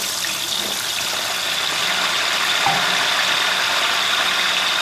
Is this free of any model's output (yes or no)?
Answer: yes